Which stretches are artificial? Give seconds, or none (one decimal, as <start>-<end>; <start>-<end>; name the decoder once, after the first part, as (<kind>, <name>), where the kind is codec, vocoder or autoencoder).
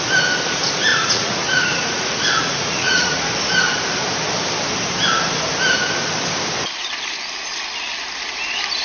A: 0.9-3.2 (vocoder, Vocos)